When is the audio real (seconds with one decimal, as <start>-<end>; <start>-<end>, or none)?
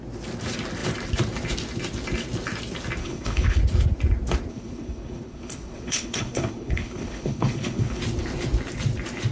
0.0-3.0; 3.6-4.5; 8.0-9.3